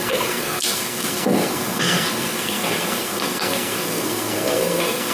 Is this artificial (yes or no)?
yes